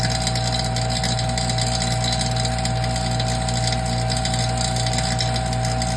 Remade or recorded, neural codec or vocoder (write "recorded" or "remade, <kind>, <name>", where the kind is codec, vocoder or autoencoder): recorded